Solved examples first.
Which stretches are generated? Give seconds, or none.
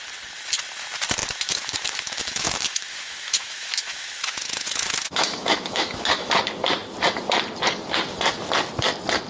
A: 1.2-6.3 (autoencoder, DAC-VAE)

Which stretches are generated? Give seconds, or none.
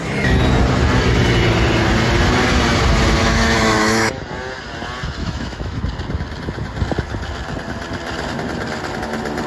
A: 3.2-4.2 (autoencoder, DAC-VAE); 5.2-5.8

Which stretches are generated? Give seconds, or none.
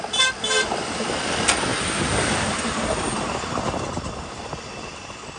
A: none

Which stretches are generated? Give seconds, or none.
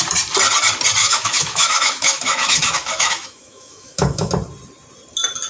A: 1.0-4.3 (autoencoder, DAC-VAE)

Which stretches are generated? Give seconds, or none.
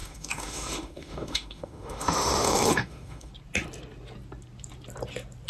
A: 0.0-3.3 (autoencoder, DAC-VAE)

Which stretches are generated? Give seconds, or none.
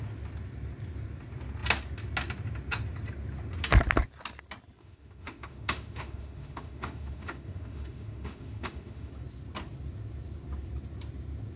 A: 4.8-9.1 (autoencoder, DAC-VAE)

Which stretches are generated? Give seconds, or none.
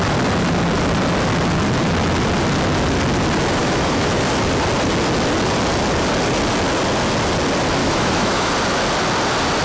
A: 3.6-4.2 (autoencoder, DAC-VAE); 7.8-8.5